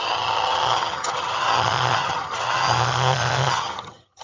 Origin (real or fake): fake